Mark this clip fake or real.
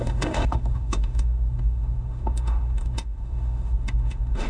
fake